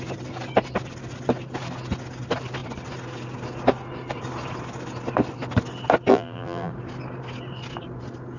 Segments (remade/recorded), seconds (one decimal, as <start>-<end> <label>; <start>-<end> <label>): 0.0-6.1 recorded; 6.1-6.7 remade; 6.7-8.4 recorded